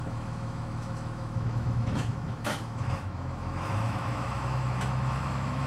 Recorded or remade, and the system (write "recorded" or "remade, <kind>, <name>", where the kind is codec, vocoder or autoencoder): remade, autoencoder, DAC-VAE